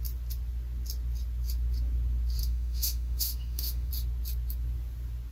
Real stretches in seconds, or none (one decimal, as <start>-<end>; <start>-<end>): 0.0-2.4; 3.9-5.3